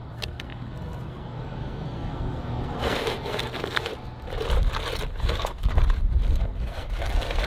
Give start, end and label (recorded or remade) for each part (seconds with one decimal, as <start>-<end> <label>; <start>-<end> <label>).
0.0-3.9 remade; 3.9-5.2 recorded; 5.2-5.8 remade; 5.8-6.4 recorded; 6.4-7.5 remade